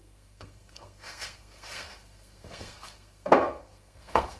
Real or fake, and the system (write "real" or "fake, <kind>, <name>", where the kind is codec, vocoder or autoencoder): fake, codec, SNAC